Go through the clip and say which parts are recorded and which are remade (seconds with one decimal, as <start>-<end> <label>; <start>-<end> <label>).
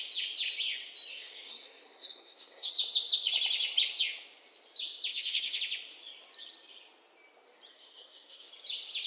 0.0-1.1 recorded; 1.1-2.7 remade; 2.7-5.1 recorded; 5.1-5.6 remade; 5.6-7.7 recorded; 7.7-8.5 remade; 8.5-9.1 recorded